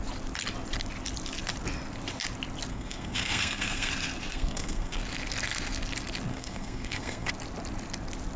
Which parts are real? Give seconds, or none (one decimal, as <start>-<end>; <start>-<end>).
0.0-2.7; 3.9-4.3; 5.0-6.3; 7.3-8.4